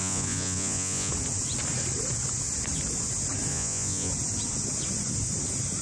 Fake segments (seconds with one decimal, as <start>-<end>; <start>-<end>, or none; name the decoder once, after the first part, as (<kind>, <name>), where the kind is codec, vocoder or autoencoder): 0.0-1.1 (vocoder, Vocos); 3.5-4.1